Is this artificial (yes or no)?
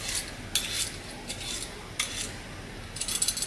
no